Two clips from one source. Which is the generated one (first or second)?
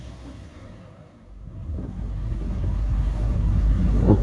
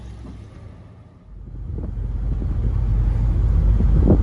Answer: first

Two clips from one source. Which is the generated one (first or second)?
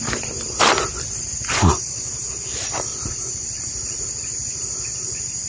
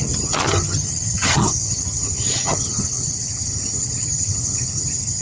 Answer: second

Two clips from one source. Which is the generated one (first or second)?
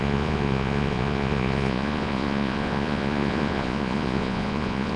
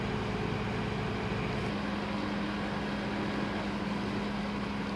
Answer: first